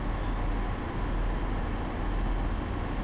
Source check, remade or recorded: recorded